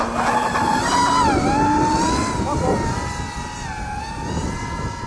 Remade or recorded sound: recorded